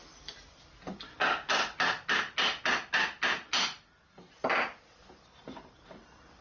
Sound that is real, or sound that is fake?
real